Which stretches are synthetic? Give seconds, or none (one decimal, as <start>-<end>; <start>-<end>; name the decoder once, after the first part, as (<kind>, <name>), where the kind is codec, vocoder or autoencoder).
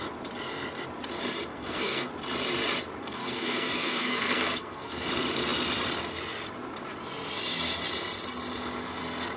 1.5-2.1 (codec, SNAC); 3.0-5.1